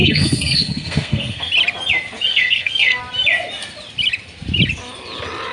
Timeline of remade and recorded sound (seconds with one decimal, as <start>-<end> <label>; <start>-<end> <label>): 0.0-1.5 remade; 1.5-2.3 recorded; 2.3-3.0 remade; 3.0-5.5 recorded

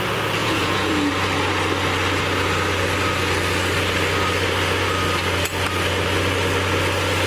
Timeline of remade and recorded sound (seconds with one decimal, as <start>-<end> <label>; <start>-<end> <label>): 0.0-0.4 recorded; 0.4-1.1 remade; 1.1-7.3 recorded

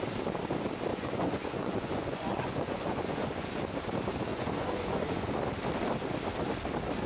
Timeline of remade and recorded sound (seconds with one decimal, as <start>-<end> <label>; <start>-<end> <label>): 0.0-0.9 recorded; 0.9-3.5 remade; 3.5-4.3 recorded; 4.3-5.4 remade; 5.4-7.1 recorded

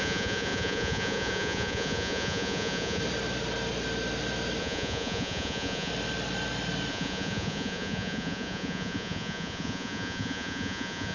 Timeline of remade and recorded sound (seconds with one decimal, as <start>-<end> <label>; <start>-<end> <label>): 0.0-3.0 remade; 3.0-4.6 recorded; 4.6-5.9 remade; 5.9-6.9 recorded; 6.9-11.1 remade

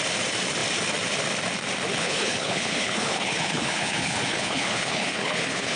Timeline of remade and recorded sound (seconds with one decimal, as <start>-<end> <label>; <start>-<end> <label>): 0.0-2.0 recorded; 2.0-5.8 remade

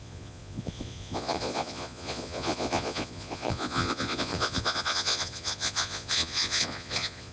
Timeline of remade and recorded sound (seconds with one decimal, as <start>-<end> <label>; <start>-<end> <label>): 0.0-7.3 remade